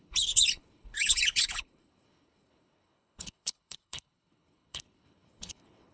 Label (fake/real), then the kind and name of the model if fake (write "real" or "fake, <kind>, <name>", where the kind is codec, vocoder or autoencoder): fake, codec, HILCodec